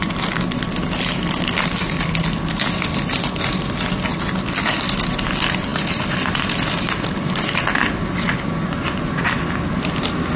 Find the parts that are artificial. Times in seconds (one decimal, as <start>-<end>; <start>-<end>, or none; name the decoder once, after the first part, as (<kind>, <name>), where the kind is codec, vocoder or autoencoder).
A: none